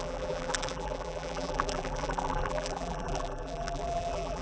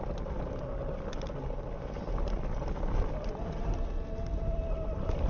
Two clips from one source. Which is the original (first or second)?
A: second